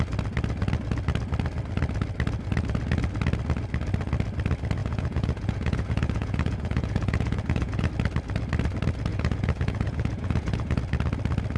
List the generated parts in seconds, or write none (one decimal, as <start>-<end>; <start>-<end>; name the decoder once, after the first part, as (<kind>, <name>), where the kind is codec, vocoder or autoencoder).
4.8-7.9 (vocoder, Vocos); 9.1-10.8